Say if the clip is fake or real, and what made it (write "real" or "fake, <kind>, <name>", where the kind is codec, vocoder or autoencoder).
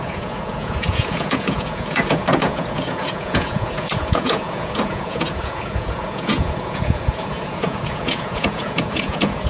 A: fake, vocoder, Vocos